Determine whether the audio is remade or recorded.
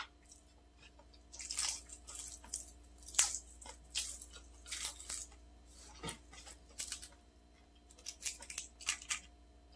recorded